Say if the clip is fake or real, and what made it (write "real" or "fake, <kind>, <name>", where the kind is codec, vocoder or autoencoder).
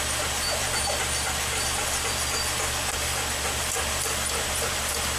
real